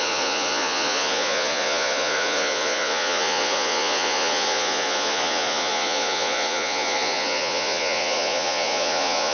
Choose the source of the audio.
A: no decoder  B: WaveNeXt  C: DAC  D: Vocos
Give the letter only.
D